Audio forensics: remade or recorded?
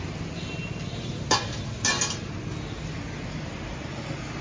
recorded